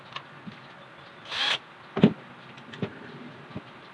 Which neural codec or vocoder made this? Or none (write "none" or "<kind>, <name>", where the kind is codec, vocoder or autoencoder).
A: none